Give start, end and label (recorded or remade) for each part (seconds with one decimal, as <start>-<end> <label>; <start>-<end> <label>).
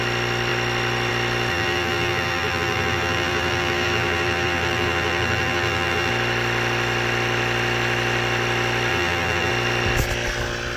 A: 0.0-1.5 recorded; 1.5-6.1 remade; 6.1-8.9 recorded; 8.9-9.5 remade; 9.5-10.8 recorded